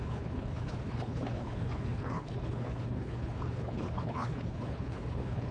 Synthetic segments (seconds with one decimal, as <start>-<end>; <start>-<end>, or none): 0.0-5.5